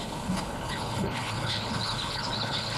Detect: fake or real fake